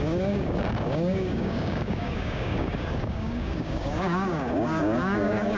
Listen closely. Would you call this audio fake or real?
fake